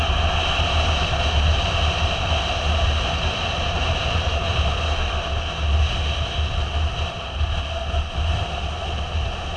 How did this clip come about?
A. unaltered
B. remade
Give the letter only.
A